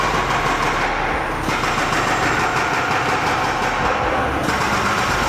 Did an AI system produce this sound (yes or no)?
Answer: no